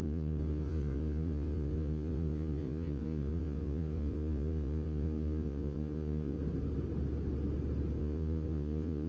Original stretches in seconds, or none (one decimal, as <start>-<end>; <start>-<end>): 6.4-8.0

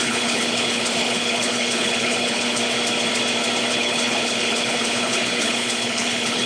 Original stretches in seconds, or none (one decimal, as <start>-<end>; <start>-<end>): 2.6-3.7